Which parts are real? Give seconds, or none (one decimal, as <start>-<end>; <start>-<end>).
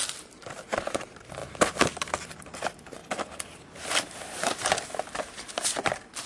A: 0.0-6.3